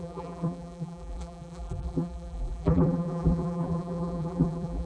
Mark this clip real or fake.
fake